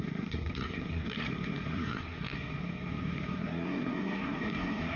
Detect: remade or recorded remade